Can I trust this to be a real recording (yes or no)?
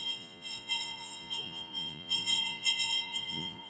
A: no